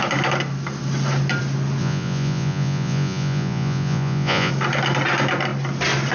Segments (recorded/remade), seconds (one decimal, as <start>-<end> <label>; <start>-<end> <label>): 0.0-1.8 recorded; 1.8-4.5 remade; 4.5-6.1 recorded

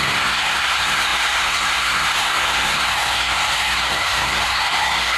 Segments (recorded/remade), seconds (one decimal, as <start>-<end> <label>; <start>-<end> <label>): 0.0-5.2 remade

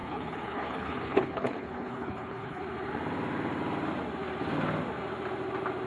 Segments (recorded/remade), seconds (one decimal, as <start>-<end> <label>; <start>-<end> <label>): 0.0-2.6 remade; 2.6-5.9 recorded

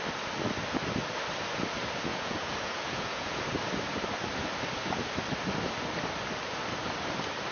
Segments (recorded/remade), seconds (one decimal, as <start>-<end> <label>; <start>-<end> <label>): 0.0-2.1 recorded; 2.1-3.4 remade; 3.4-7.5 recorded